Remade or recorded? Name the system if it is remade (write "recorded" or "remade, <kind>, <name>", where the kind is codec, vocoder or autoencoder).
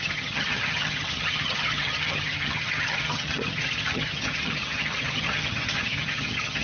remade, vocoder, HiFi-GAN